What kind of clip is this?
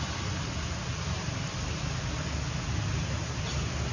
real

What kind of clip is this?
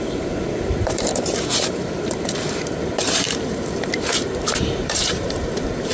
fake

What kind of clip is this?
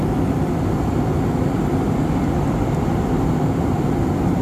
real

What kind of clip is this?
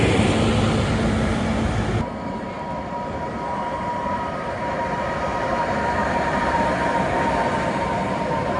fake